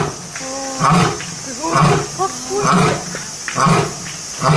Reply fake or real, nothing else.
real